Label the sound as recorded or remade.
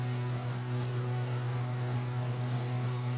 remade